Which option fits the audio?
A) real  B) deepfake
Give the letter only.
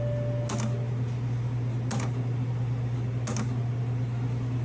A